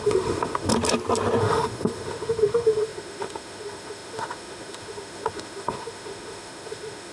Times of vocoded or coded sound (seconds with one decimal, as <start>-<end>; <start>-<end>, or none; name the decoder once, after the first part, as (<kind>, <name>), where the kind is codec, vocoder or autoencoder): 0.0-0.7 (autoencoder, DAC-VAE); 1.4-7.1